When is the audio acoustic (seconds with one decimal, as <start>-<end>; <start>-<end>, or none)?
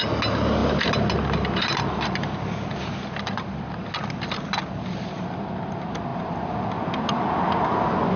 0.0-8.2